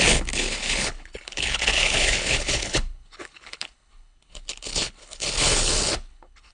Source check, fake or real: fake